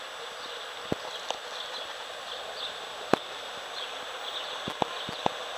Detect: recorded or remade recorded